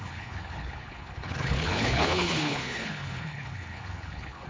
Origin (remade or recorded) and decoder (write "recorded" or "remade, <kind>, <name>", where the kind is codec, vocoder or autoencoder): remade, codec, HILCodec